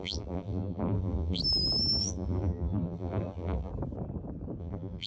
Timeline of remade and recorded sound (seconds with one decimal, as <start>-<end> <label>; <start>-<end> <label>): 0.0-1.4 remade; 1.4-2.0 recorded; 2.0-3.7 remade; 3.7-4.6 recorded; 4.6-5.1 remade